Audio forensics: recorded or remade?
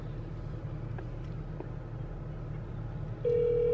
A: recorded